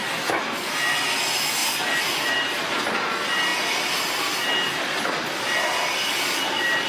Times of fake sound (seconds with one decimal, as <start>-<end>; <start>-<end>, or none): none

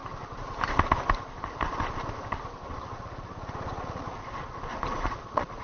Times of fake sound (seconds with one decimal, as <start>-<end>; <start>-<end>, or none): 2.7-5.6